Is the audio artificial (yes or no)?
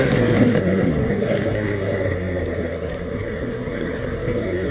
yes